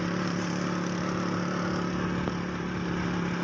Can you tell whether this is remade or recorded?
recorded